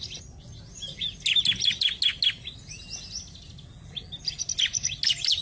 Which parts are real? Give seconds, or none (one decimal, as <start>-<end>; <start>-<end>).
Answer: 0.0-5.4